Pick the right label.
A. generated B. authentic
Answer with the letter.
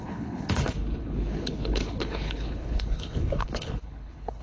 A